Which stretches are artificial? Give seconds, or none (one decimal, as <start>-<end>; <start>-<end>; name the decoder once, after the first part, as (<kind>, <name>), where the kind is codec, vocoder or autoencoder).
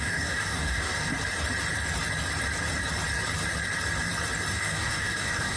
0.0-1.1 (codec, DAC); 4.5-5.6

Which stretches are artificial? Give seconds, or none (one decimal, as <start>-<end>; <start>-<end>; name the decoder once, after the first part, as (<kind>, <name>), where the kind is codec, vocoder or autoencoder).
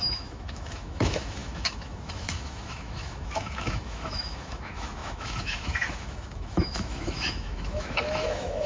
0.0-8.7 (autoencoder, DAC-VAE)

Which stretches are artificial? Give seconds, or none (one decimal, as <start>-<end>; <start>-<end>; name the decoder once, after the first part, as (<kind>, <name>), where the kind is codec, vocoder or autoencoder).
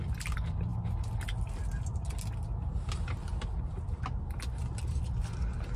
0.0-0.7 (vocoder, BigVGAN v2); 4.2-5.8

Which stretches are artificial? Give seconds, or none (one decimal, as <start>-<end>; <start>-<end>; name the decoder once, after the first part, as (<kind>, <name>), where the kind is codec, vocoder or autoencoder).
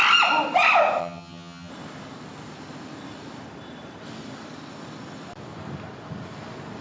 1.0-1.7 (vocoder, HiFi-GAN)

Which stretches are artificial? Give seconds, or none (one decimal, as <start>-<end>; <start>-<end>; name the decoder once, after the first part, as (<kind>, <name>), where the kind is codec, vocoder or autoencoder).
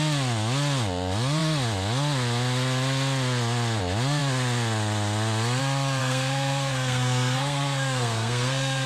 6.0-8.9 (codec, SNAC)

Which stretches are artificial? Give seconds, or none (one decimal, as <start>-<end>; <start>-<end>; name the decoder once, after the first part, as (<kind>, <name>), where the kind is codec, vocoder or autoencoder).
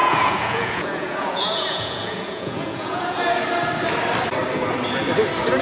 0.0-3.4 (vocoder, Vocos)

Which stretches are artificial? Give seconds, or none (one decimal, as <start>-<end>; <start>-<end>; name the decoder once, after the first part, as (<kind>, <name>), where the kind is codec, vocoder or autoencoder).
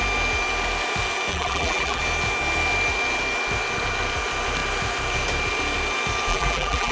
1.3-2.0 (vocoder, BigVGAN v2); 6.3-6.9